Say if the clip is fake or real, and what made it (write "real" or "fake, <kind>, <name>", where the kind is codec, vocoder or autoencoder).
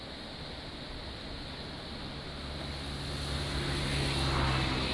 real